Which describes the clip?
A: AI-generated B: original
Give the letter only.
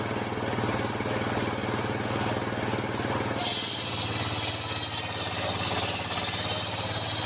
B